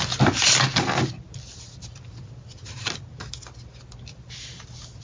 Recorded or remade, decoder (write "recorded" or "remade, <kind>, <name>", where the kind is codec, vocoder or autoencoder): recorded